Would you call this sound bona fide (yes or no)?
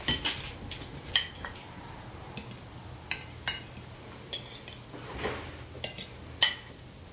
yes